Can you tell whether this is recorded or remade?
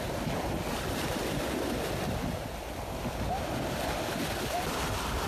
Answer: recorded